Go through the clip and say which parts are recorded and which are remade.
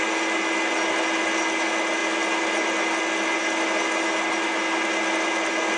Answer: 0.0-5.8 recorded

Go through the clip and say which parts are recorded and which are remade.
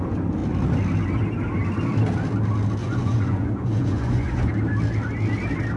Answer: 0.0-2.8 recorded; 2.8-4.5 remade; 4.5-5.8 recorded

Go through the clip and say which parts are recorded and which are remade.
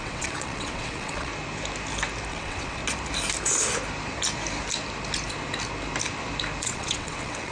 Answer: 0.0-1.3 remade; 1.3-2.3 recorded; 2.3-2.8 remade; 2.8-6.6 recorded; 6.6-7.5 remade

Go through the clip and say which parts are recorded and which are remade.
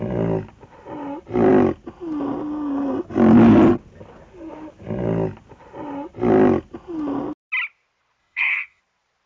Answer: 0.0-8.2 recorded; 8.2-8.8 remade; 8.8-9.3 recorded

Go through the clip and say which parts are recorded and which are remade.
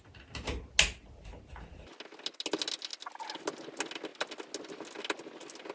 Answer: 0.0-5.7 recorded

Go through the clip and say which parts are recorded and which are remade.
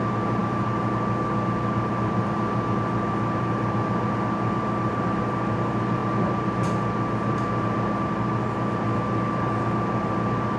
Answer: 0.0-10.6 recorded